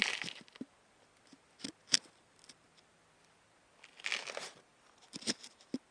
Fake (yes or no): no